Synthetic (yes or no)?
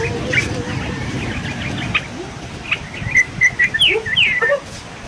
no